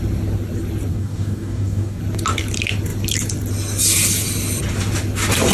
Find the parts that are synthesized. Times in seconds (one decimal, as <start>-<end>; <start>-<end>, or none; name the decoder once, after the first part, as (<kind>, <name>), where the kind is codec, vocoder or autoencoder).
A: 0.9-2.0 (codec, DAC)